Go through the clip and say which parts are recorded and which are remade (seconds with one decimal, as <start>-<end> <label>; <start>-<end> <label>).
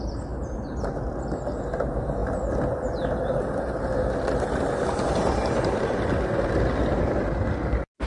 0.0-8.1 recorded